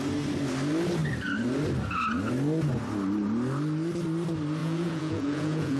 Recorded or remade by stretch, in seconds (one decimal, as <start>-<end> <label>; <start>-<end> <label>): 0.0-4.6 recorded; 4.6-5.8 remade